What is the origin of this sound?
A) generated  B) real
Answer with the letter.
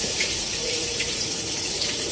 A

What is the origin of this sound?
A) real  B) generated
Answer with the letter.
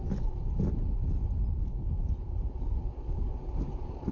A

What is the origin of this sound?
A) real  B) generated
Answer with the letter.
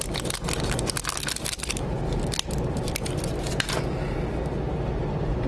A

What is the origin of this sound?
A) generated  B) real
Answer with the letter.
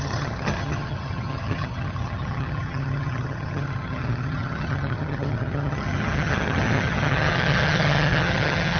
A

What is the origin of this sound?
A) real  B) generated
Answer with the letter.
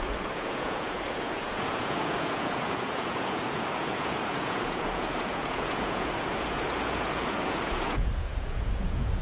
B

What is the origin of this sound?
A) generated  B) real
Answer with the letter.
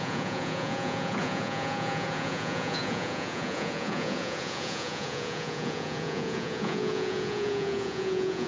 A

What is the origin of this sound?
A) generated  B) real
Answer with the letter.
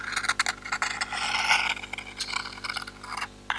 B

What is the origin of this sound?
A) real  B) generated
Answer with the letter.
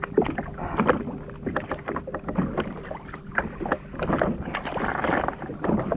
A